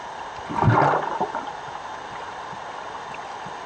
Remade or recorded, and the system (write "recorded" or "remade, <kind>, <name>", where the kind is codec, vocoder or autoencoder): recorded